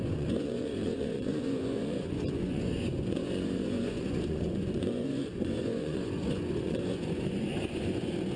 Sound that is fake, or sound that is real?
fake